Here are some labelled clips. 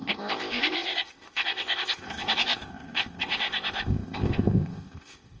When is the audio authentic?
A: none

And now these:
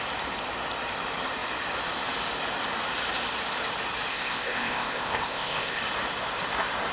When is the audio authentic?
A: 0.0-4.1; 5.8-6.9